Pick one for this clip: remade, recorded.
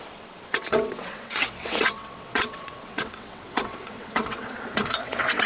remade